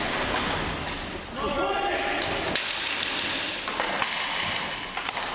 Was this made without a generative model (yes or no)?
yes